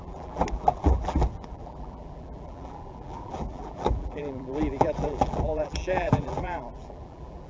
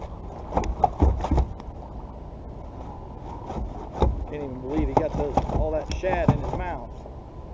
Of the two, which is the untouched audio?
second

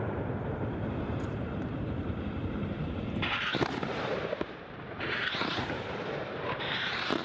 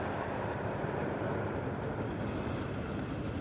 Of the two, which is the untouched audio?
second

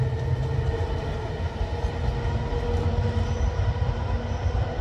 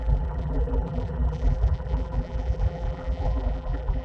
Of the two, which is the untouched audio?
first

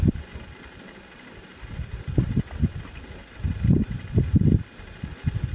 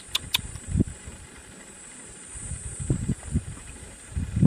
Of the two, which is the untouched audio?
first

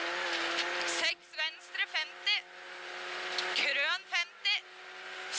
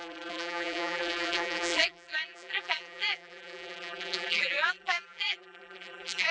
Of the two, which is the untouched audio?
first